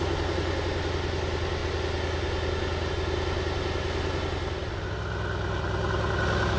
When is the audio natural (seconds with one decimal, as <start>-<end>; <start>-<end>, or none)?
0.0-6.6

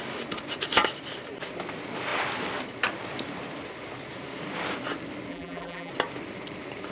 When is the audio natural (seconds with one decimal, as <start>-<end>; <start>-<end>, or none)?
0.0-5.3; 5.9-6.9